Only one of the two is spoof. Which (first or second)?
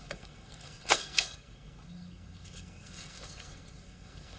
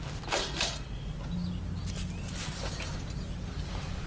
first